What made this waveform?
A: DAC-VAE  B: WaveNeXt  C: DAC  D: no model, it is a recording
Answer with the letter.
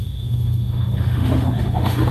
A